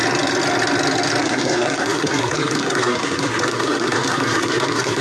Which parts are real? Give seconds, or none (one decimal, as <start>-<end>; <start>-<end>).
0.0-1.2